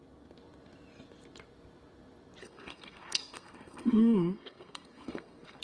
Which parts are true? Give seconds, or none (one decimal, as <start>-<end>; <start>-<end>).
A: 0.0-2.4